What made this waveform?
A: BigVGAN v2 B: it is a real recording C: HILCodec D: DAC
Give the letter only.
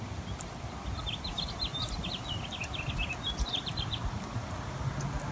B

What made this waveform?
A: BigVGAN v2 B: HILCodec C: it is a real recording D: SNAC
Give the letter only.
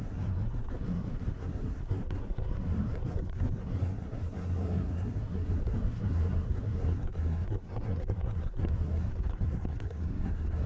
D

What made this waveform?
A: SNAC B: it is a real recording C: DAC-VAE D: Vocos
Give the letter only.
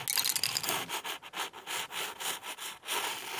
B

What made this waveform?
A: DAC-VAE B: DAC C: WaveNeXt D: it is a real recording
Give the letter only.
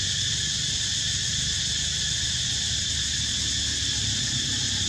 D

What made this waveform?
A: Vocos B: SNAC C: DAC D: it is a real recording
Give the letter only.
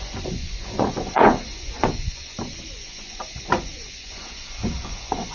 A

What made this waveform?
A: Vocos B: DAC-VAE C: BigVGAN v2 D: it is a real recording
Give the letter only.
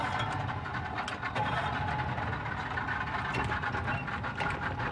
D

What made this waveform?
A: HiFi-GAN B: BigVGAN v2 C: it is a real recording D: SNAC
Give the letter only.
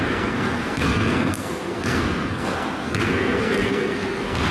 D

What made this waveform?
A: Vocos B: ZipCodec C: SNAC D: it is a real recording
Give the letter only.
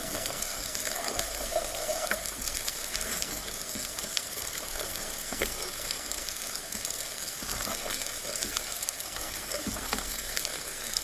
C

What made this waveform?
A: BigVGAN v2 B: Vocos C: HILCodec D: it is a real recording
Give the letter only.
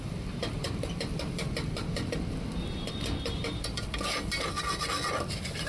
A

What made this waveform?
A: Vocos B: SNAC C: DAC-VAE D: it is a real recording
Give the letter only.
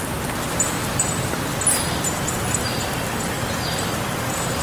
D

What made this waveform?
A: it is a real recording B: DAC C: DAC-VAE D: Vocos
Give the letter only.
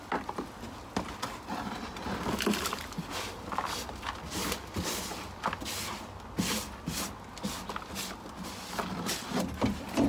A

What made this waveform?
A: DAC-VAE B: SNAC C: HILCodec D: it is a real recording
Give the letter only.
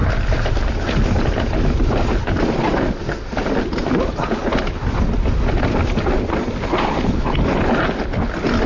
D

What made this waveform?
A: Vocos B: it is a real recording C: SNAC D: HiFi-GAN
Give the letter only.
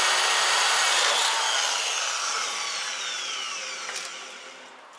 B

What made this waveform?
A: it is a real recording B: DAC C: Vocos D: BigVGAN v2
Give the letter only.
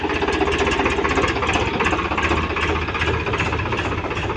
A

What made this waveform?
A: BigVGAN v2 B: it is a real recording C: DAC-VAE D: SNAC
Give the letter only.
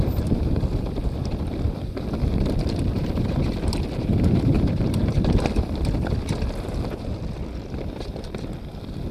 A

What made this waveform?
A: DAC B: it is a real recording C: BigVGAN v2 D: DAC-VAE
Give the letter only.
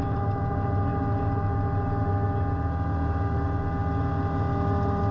B